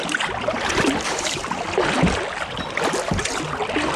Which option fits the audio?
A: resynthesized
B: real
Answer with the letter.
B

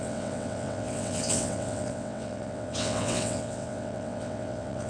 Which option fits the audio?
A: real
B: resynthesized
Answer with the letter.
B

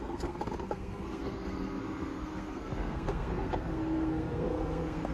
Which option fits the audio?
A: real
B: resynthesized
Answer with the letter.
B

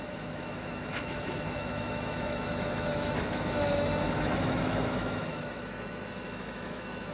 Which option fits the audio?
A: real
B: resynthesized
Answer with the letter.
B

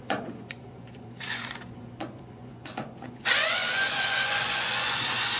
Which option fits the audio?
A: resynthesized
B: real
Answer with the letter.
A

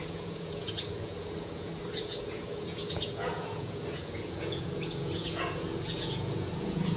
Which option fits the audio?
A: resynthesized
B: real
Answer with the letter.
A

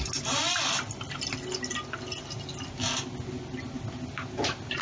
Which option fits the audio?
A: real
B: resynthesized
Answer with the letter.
A